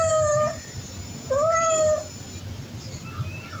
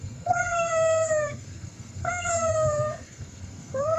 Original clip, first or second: first